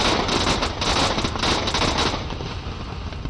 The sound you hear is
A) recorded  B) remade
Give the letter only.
A